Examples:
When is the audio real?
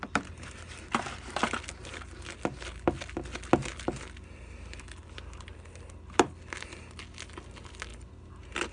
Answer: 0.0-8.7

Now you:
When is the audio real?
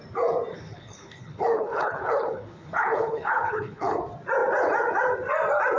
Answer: 0.0-0.5; 4.0-5.8